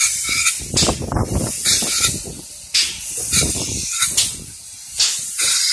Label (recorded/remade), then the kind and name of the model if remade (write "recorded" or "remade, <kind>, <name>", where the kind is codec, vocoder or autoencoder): recorded